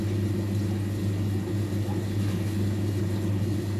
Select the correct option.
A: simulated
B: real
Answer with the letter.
B